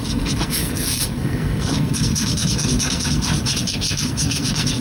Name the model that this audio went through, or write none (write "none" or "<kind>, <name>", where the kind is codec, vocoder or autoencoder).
codec, SNAC